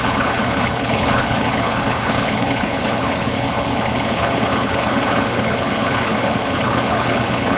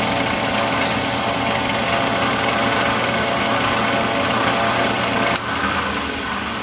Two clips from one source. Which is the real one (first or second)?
second